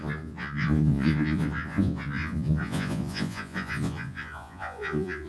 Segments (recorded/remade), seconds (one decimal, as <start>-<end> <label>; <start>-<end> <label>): 0.0-5.3 remade